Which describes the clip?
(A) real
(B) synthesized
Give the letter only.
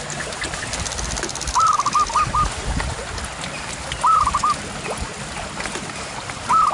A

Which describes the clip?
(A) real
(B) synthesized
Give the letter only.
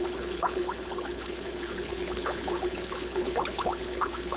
B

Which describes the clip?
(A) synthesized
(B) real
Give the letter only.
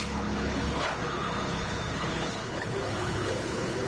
A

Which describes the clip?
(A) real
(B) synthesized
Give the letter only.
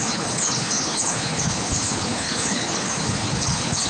B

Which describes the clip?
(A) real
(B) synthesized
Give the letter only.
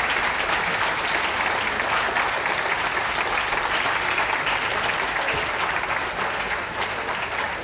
A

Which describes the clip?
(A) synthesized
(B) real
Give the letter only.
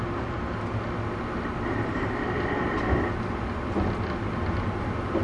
B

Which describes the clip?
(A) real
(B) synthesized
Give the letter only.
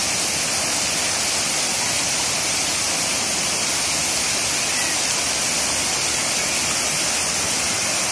A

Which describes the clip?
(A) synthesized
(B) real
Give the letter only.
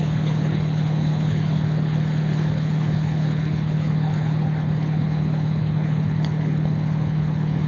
A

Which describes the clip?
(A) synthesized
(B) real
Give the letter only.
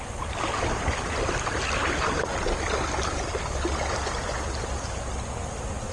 B